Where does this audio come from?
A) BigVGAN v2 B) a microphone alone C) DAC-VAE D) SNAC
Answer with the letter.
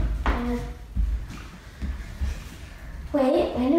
B